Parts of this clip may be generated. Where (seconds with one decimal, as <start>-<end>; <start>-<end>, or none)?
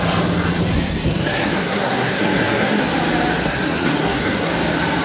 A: 0.7-2.8; 3.4-4.5